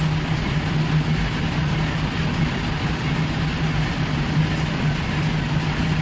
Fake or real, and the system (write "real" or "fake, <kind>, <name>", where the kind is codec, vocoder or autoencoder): real